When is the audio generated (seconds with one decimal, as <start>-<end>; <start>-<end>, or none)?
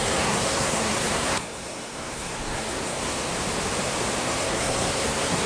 0.0-3.3; 4.2-5.5